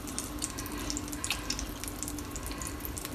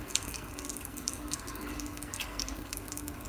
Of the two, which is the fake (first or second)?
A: second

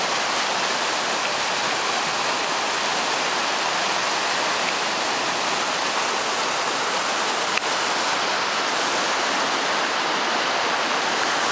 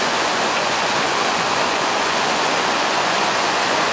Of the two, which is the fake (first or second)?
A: second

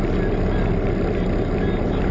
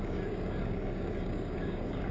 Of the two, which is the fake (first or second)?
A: second